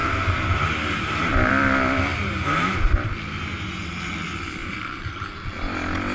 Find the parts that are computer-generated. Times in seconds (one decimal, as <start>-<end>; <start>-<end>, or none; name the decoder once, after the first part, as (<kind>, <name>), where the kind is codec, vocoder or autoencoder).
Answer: 0.0-1.5 (vocoder, BigVGAN v2); 2.1-3.1; 4.6-5.2